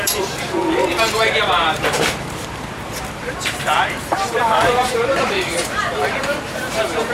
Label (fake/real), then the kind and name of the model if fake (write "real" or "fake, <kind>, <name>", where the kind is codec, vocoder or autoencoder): fake, vocoder, BigVGAN v2